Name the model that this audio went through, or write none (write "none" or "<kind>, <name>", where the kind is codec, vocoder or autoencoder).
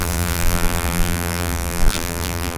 vocoder, BigVGAN v2